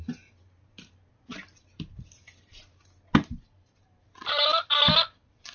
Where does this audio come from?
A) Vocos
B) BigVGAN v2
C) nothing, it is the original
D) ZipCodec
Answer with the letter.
C